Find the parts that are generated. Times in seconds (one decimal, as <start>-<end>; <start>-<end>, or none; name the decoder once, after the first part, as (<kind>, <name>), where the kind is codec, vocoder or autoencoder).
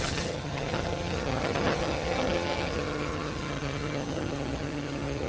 0.0-5.3 (vocoder, HiFi-GAN)